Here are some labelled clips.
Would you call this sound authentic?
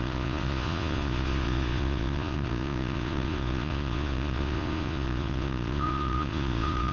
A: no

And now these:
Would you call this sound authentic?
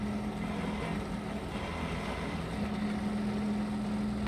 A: yes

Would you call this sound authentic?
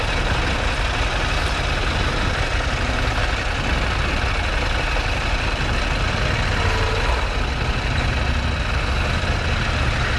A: yes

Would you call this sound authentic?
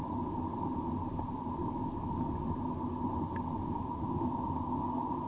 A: yes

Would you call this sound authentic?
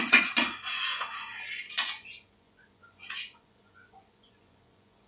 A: no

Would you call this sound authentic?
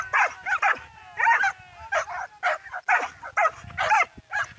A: yes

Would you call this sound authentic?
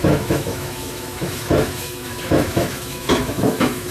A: no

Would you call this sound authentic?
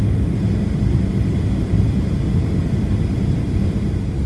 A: yes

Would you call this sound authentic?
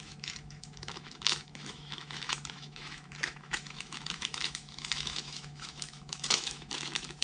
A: no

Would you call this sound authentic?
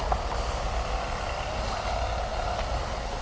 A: yes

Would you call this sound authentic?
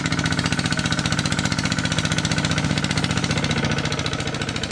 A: yes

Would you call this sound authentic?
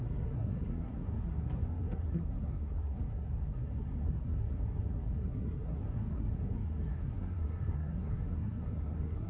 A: no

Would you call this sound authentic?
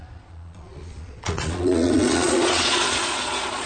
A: no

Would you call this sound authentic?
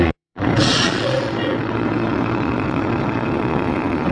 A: no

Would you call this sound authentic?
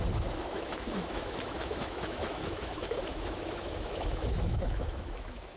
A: no